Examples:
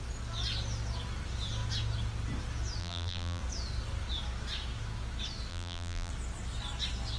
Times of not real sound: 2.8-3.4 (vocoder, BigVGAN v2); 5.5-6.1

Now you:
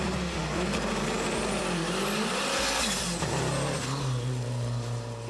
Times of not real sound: none

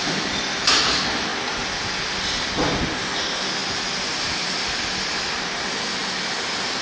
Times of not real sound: 3.6-5.5 (vocoder, BigVGAN v2); 6.0-6.8

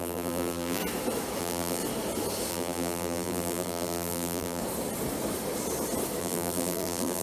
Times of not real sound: 0.0-0.8 (vocoder, BigVGAN v2); 1.4-1.8; 2.5-4.6; 6.2-7.2

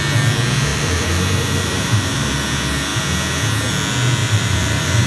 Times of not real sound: 0.7-2.4 (vocoder, BigVGAN v2); 4.2-5.1

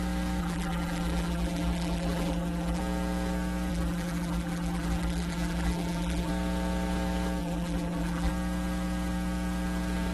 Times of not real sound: 0.4-2.8 (vocoder, BigVGAN v2); 3.7-6.3; 7.4-8.3

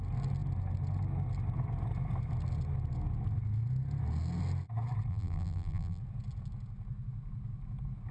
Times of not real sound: 5.1-6.0 (vocoder, BigVGAN v2)